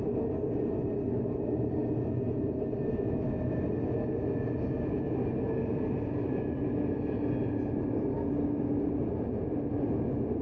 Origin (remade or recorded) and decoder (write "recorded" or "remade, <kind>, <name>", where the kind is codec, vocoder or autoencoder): recorded